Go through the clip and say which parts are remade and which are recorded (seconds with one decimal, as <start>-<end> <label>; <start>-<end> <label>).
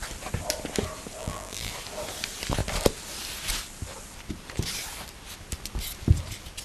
0.0-1.2 recorded; 1.2-1.7 remade; 1.7-6.6 recorded